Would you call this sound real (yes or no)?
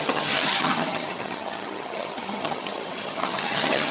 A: no